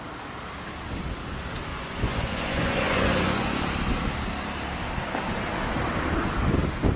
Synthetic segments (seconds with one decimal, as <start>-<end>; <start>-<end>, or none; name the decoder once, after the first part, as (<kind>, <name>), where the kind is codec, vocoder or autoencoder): 1.7-3.6 (vocoder, Vocos)

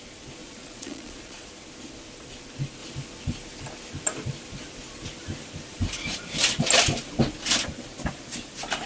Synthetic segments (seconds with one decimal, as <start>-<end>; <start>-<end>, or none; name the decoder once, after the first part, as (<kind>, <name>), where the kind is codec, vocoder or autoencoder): 0.4-1.5 (vocoder, Vocos)

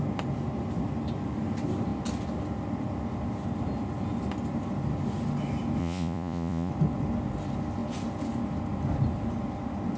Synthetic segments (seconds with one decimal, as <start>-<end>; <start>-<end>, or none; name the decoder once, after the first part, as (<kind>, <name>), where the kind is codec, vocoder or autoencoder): 5.8-6.7 (vocoder, Vocos)

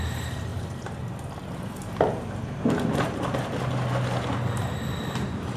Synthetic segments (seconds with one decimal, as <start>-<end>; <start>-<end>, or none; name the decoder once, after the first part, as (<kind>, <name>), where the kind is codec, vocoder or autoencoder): none

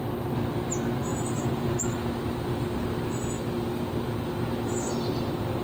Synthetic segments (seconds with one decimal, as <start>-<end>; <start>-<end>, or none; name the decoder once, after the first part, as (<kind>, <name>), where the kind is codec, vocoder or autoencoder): 1.1-1.8 (vocoder, Vocos)

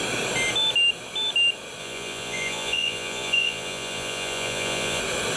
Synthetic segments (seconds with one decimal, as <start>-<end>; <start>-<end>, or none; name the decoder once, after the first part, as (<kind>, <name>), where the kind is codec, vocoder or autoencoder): 1.8-5.0 (vocoder, Vocos)

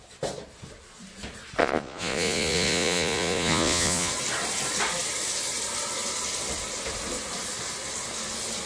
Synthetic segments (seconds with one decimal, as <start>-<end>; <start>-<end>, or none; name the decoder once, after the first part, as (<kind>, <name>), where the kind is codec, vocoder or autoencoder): 1.6-4.1 (vocoder, Vocos)